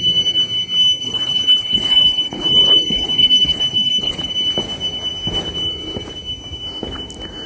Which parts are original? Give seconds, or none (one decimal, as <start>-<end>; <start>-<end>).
0.0-0.8; 4.3-7.5